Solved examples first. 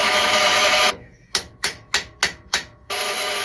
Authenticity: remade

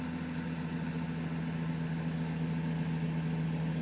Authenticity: recorded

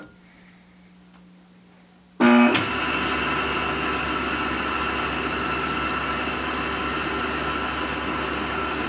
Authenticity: recorded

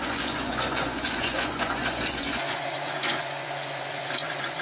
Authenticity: remade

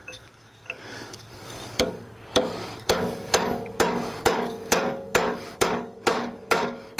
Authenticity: remade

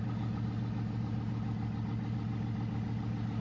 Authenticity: recorded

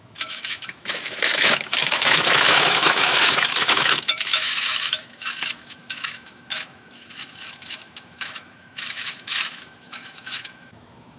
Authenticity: remade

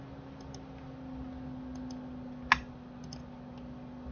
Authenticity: recorded